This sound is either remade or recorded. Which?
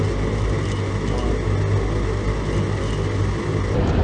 recorded